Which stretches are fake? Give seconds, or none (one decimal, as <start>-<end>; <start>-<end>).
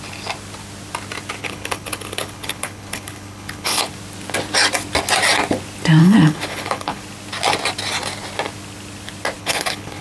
1.4-3.9; 6.0-7.0; 9.4-10.0